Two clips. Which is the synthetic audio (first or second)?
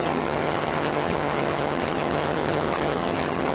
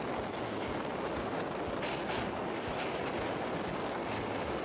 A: first